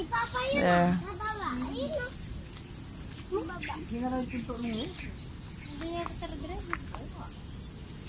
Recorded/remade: recorded